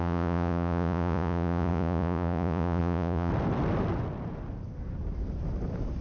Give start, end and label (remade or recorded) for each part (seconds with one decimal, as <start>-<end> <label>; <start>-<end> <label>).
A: 0.0-3.3 remade; 3.3-6.0 recorded